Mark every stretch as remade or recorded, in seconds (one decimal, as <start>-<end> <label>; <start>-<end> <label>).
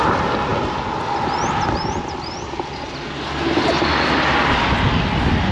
0.0-5.5 recorded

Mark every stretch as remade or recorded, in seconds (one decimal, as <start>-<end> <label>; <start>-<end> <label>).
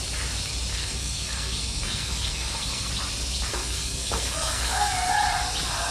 0.0-0.7 recorded; 0.7-2.9 remade; 2.9-3.5 recorded; 3.5-5.1 remade; 5.1-5.9 recorded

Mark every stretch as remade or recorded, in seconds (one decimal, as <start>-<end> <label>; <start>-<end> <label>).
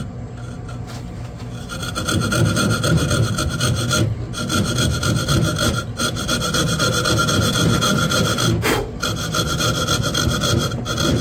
0.0-11.2 recorded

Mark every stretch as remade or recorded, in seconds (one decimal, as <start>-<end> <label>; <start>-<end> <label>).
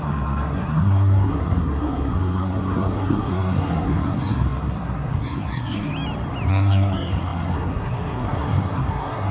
0.0-5.9 remade; 5.9-6.5 recorded; 6.5-9.3 remade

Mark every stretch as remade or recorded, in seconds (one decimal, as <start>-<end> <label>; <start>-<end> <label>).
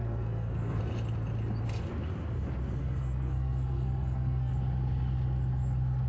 0.0-0.8 remade; 0.8-2.8 recorded; 2.8-4.5 remade; 4.5-6.1 recorded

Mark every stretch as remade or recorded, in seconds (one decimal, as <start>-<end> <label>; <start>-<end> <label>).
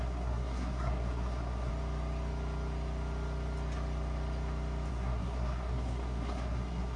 0.0-1.7 remade; 1.7-4.9 recorded; 4.9-7.0 remade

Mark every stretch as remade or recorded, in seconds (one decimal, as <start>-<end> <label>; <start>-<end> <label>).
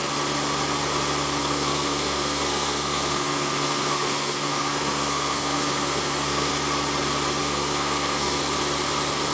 0.0-1.4 recorded; 1.4-6.5 remade; 6.5-7.4 recorded; 7.4-8.4 remade; 8.4-9.3 recorded